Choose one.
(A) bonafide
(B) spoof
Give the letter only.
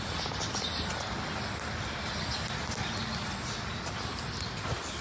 A